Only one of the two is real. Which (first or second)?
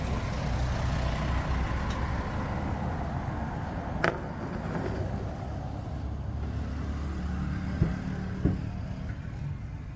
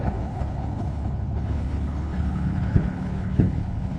first